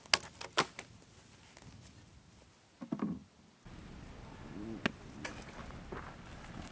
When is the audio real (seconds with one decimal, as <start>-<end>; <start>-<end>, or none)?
0.0-6.7